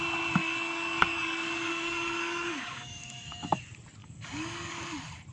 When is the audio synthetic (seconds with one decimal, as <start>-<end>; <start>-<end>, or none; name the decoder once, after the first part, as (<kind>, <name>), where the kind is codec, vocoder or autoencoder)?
0.4-3.6 (codec, DAC); 4.0-4.8